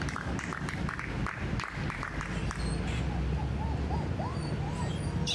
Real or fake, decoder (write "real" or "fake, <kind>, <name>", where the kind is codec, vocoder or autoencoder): real